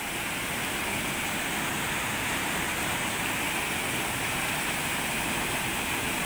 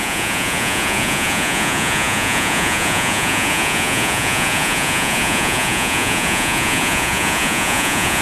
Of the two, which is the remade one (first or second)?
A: second